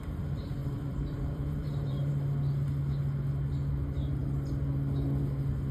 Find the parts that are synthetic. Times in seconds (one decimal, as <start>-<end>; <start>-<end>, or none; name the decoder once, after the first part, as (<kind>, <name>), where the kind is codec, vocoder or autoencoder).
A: 0.6-2.1 (vocoder, BigVGAN v2)